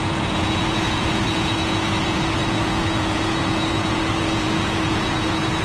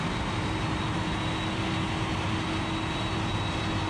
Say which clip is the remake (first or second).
first